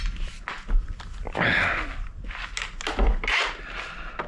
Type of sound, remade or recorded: recorded